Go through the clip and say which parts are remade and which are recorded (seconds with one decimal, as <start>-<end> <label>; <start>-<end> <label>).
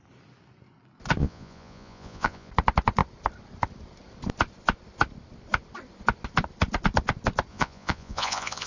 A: 0.0-1.2 recorded; 1.2-2.5 remade; 2.5-7.5 recorded; 7.5-8.7 remade